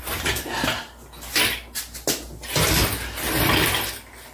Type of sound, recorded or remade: recorded